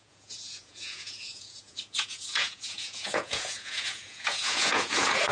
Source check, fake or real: fake